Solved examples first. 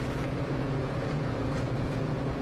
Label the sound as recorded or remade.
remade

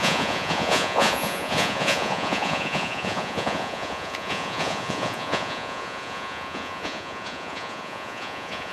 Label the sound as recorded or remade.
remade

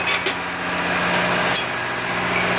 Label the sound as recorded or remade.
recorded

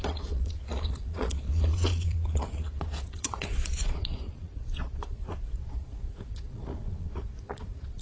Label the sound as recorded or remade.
remade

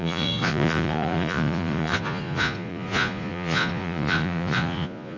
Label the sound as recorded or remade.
remade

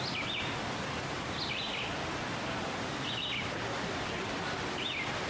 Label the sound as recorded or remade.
recorded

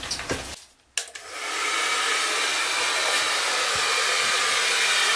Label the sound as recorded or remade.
recorded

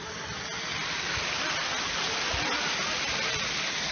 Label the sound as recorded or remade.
recorded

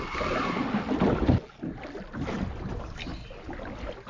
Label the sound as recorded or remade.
recorded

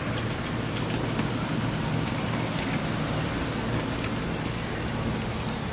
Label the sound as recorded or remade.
recorded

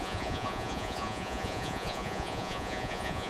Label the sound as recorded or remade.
remade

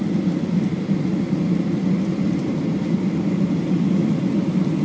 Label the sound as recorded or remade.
recorded